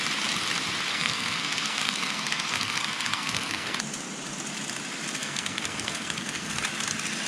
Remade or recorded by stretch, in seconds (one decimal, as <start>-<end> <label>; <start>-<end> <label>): 0.0-0.9 recorded; 0.9-3.8 remade; 3.8-5.2 recorded; 5.2-6.6 remade; 6.6-7.3 recorded